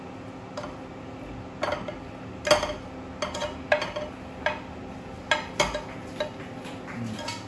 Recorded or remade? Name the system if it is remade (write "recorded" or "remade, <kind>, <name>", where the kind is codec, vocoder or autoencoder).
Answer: recorded